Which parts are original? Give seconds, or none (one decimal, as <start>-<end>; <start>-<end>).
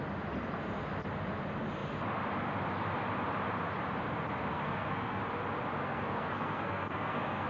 0.0-4.5; 5.2-5.8